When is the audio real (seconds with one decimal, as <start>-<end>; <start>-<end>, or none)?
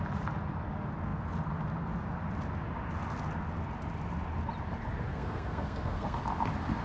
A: 0.0-5.1; 6.2-6.8